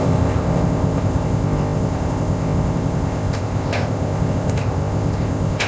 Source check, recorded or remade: remade